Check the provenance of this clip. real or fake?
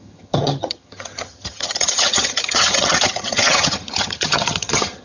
fake